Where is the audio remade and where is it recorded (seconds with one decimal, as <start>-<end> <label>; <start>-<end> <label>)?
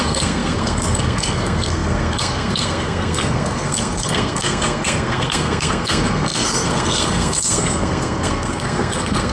0.0-9.3 remade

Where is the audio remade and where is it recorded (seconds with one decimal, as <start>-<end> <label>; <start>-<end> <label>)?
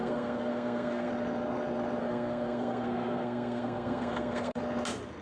0.0-1.1 remade; 1.1-2.0 recorded; 2.0-4.6 remade; 4.6-5.2 recorded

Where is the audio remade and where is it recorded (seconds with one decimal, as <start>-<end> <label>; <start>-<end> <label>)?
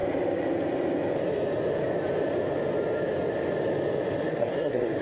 0.0-4.3 recorded; 4.3-5.0 remade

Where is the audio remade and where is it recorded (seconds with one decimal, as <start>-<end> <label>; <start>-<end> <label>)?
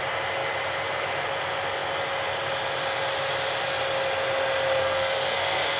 0.0-4.8 recorded; 4.8-5.8 remade